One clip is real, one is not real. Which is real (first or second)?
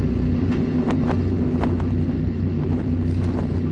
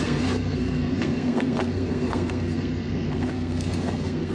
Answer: first